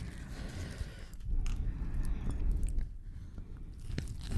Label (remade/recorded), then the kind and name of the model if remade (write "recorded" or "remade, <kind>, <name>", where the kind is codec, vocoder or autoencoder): recorded